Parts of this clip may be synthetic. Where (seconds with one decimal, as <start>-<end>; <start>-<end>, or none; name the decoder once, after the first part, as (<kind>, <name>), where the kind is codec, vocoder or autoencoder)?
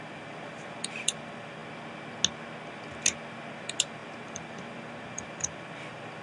0.0-1.6 (vocoder, BigVGAN v2); 3.5-6.2